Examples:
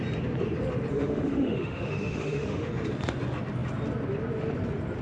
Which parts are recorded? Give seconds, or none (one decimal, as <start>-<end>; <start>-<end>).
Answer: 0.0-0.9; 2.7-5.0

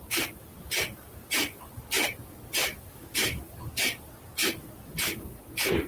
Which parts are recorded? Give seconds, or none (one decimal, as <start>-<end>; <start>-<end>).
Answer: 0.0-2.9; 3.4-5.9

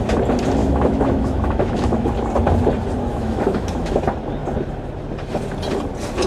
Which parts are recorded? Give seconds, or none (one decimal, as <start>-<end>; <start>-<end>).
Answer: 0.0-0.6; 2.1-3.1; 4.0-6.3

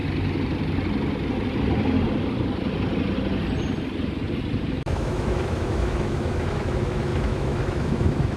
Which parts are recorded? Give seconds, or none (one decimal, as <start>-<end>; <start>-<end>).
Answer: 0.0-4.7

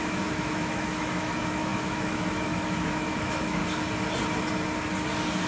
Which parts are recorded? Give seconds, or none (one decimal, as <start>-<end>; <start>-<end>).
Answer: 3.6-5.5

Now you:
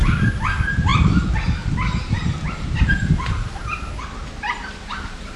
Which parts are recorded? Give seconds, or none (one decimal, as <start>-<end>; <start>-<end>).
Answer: 0.0-5.4

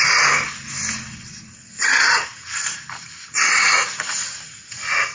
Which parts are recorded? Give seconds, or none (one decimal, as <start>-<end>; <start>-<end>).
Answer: 0.0-5.1